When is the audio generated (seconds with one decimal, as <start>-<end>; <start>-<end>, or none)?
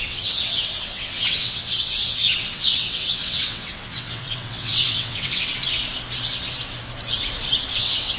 0.0-5.5; 7.7-8.2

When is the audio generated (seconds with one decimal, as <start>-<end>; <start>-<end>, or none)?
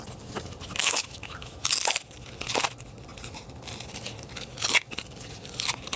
0.8-1.6